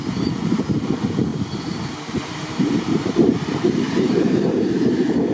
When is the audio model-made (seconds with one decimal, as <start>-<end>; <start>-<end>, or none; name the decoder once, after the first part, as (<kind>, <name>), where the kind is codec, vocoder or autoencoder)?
1.3-4.5 (vocoder, BigVGAN v2)